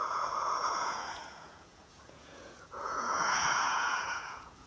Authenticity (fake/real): fake